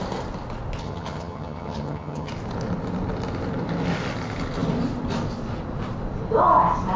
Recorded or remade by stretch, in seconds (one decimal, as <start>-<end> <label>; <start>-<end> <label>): 0.0-0.8 recorded; 0.8-2.3 remade; 2.3-7.0 recorded